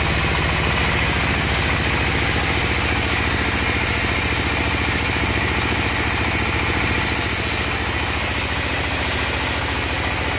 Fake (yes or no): no